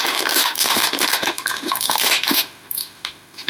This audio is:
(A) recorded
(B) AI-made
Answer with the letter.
B